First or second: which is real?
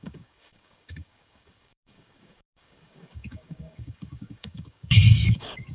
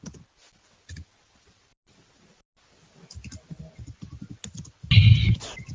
second